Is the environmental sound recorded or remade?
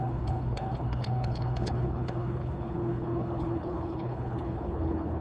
remade